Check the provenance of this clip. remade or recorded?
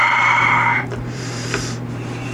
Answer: remade